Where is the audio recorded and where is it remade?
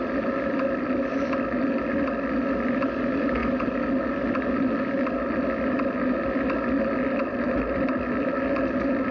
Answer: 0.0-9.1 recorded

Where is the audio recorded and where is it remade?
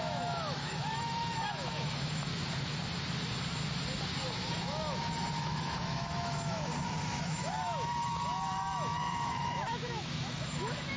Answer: 0.0-2.3 remade; 2.3-4.5 recorded; 4.5-6.7 remade; 6.7-7.2 recorded; 7.2-11.0 remade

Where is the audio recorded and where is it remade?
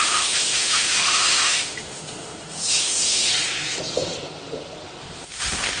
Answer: 0.0-3.3 remade; 3.3-5.0 recorded; 5.0-5.8 remade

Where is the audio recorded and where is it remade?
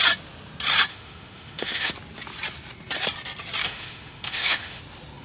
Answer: 0.0-0.9 recorded; 0.9-1.9 remade; 1.9-3.6 recorded; 3.6-4.8 remade; 4.8-5.2 recorded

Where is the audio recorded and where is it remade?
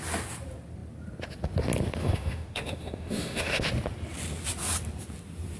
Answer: 0.0-2.0 recorded; 2.0-3.7 remade; 3.7-5.6 recorded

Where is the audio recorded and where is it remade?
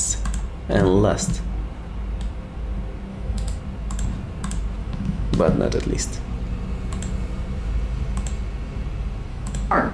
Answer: 0.0-3.1 recorded; 3.1-3.6 remade; 3.6-4.8 recorded; 4.8-5.8 remade; 5.8-9.3 recorded; 9.3-9.9 remade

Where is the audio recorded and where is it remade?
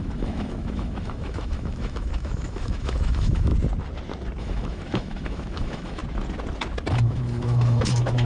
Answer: 0.0-3.5 remade; 3.5-4.4 recorded; 4.4-6.0 remade; 6.0-6.9 recorded; 6.9-8.2 remade